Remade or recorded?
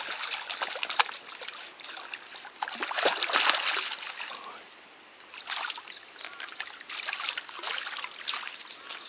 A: recorded